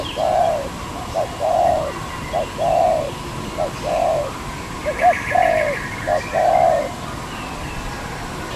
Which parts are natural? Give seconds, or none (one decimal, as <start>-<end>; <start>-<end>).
6.1-8.0

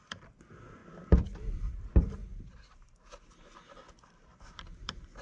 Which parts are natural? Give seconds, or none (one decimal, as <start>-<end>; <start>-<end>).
0.0-2.2; 3.4-4.3

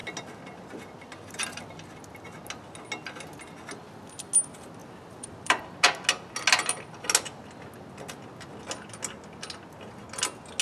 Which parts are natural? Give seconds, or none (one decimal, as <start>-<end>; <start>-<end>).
0.0-4.8; 5.6-10.6

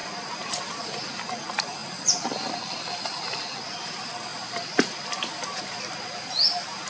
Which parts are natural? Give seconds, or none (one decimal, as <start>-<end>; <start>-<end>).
1.2-1.8; 2.6-4.3; 5.6-6.9

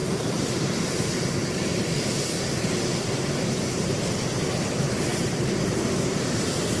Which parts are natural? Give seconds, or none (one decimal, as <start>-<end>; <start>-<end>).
5.1-6.1

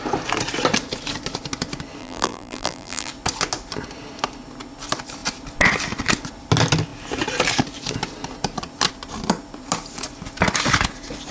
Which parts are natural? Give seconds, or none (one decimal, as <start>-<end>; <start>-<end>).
0.0-2.0; 3.1-11.3